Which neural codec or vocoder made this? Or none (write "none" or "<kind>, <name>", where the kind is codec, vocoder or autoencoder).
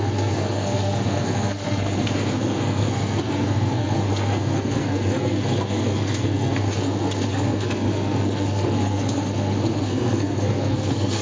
codec, SNAC